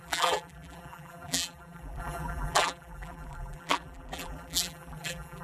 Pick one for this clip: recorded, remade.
remade